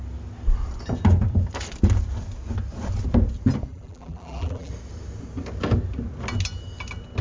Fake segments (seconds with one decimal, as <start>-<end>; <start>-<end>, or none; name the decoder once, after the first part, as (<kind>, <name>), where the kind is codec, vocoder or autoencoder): 3.7-4.7 (vocoder, BigVGAN v2)